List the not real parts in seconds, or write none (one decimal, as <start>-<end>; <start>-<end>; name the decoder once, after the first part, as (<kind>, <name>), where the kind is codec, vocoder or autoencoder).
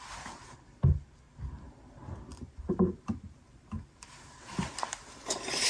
2.3-5.7 (vocoder, BigVGAN v2)